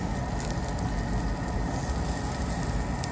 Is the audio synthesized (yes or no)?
no